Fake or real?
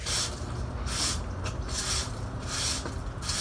real